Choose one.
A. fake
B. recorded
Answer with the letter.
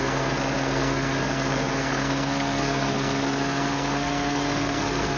A